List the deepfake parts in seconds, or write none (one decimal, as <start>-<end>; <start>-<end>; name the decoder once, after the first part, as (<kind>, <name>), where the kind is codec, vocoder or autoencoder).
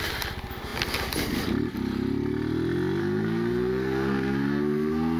3.0-5.2 (codec, SNAC)